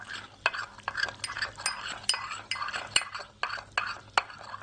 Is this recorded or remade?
recorded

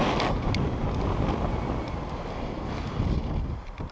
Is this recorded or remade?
recorded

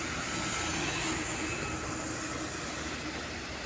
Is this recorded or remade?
recorded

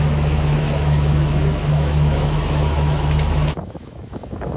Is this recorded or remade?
remade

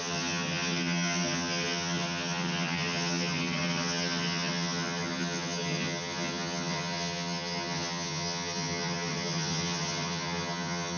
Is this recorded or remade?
remade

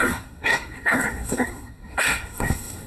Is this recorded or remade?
remade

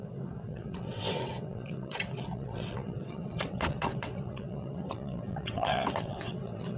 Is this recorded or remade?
remade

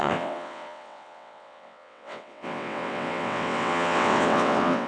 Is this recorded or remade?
remade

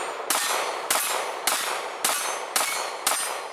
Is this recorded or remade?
recorded